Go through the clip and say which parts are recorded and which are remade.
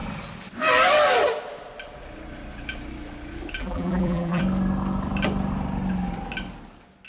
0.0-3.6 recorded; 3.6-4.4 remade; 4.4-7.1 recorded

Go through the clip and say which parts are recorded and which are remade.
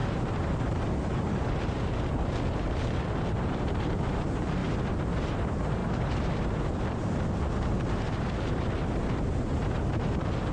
0.0-10.5 remade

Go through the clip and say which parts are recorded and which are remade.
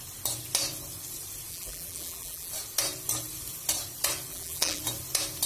0.0-1.5 recorded; 1.5-2.5 remade; 2.5-4.3 recorded; 4.3-4.8 remade; 4.8-5.5 recorded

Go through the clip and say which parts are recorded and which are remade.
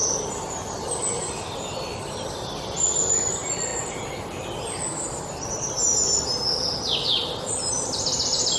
0.0-3.7 remade; 3.7-7.7 recorded; 7.7-8.6 remade